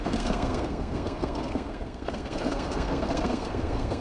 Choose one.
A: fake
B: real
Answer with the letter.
A